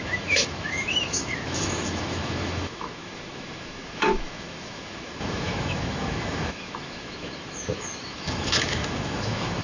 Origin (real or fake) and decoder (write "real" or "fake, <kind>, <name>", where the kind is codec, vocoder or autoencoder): fake, autoencoder, DAC-VAE